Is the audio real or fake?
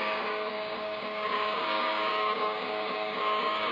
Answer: fake